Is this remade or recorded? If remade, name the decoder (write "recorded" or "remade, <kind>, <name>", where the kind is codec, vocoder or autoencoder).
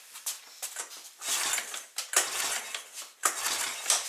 recorded